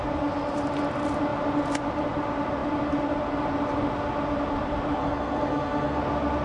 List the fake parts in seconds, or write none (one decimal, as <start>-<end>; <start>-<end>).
5.0-6.0